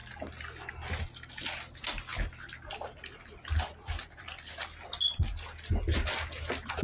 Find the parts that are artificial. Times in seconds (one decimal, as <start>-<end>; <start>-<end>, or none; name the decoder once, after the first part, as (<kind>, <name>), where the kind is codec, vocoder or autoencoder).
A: none